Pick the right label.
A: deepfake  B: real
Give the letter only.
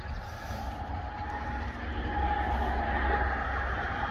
B